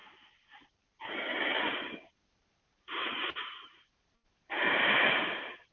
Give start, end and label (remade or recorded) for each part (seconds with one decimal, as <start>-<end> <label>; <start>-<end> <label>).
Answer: 0.0-2.4 recorded; 2.4-4.8 remade; 4.8-5.7 recorded